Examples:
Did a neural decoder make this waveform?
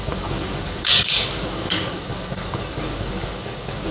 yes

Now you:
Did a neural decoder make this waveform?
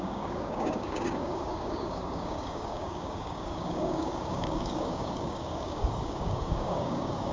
yes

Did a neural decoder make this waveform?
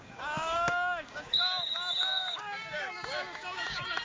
yes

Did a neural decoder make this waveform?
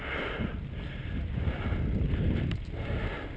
no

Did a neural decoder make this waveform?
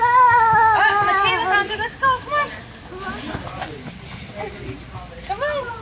no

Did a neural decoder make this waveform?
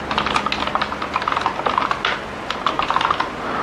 no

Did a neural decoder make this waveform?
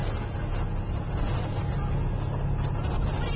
no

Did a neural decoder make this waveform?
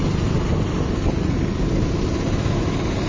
no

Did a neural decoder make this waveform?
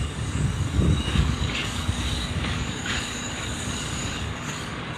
yes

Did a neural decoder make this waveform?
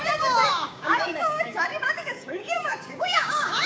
yes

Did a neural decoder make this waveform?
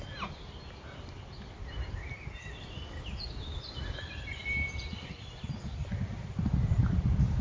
no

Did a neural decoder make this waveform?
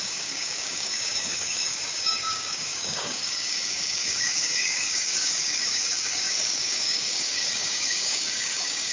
yes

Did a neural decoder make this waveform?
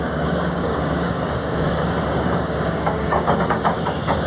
yes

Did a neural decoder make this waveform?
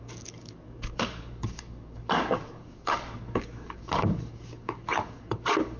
yes